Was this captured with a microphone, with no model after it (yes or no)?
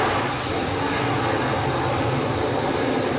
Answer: yes